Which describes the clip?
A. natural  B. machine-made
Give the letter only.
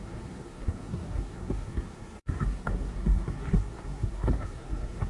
B